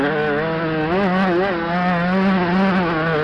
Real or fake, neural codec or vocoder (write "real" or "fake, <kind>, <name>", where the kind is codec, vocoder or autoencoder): real